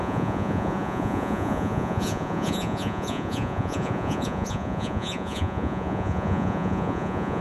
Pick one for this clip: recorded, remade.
remade